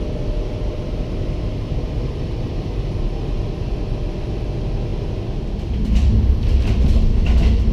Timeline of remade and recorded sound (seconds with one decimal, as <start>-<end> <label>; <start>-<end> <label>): 0.0-7.7 recorded